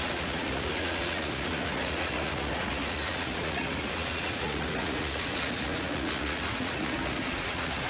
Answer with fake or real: fake